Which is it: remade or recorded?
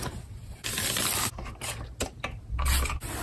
recorded